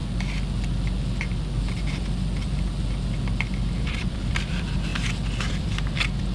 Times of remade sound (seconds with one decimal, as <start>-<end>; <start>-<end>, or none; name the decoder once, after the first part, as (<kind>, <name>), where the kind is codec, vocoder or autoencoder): 3.8-4.9 (vocoder, BigVGAN v2); 5.5-6.3